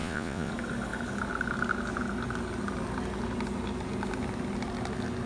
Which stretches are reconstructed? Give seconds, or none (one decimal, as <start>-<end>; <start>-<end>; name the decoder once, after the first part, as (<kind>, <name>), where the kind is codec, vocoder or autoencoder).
0.0-0.5 (vocoder, Vocos)